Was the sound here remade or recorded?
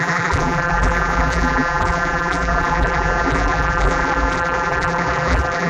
remade